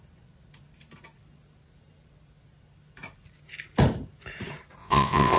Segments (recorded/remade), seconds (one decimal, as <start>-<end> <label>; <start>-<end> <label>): 0.0-4.8 recorded; 4.8-5.4 remade